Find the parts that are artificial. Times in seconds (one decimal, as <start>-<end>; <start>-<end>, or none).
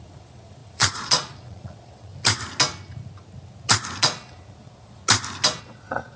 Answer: 0.0-2.1; 4.0-5.0; 5.6-6.2